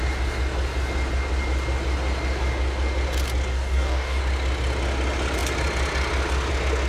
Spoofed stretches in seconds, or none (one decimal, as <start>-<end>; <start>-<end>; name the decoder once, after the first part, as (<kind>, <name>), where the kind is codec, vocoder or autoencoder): 3.5-4.2 (codec, DAC)